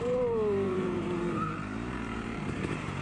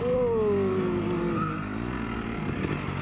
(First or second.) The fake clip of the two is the first